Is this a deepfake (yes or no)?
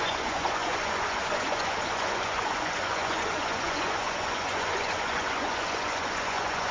yes